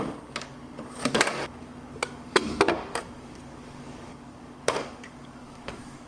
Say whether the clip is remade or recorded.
remade